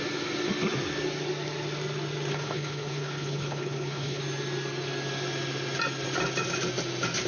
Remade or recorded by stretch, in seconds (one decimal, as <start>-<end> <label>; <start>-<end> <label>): 0.0-2.3 recorded; 2.3-4.2 remade; 4.2-7.3 recorded